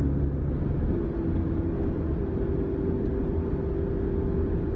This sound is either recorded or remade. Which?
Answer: recorded